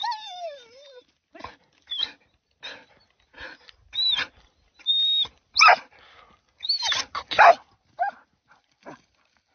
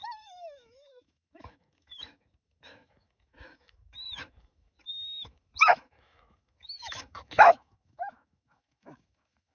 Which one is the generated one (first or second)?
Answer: second